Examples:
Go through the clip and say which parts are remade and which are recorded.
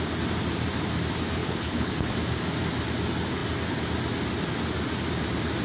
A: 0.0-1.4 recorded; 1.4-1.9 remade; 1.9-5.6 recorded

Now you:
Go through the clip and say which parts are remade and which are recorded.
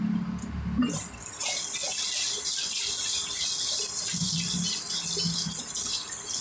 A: 0.0-6.4 recorded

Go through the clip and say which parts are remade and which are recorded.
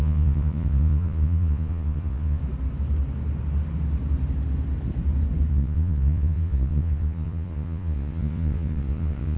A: 0.0-2.4 remade; 2.4-5.5 recorded; 5.5-9.4 remade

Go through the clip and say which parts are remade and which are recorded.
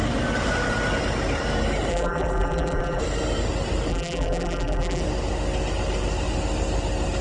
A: 0.0-1.9 recorded; 1.9-3.0 remade; 3.0-3.9 recorded; 3.9-5.0 remade; 5.0-7.2 recorded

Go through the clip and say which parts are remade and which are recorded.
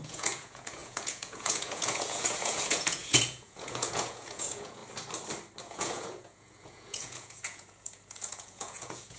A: 0.0-4.8 remade; 4.8-5.6 recorded; 5.6-9.2 remade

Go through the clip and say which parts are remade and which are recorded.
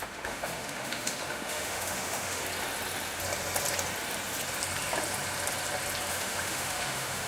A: 0.0-2.4 remade; 2.4-6.1 recorded; 6.1-7.3 remade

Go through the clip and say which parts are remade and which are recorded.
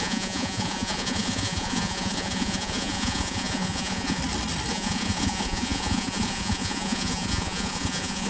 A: 0.0-4.2 remade; 4.2-4.7 recorded; 4.7-8.3 remade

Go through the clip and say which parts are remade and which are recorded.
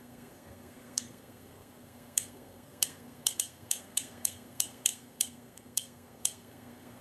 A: 0.0-7.0 remade